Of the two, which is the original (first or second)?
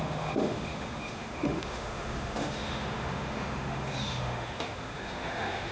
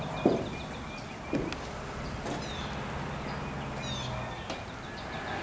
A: second